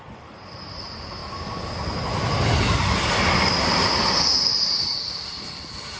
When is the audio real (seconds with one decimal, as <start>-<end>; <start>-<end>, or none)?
1.2-4.8